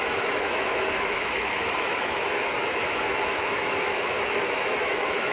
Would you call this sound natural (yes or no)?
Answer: no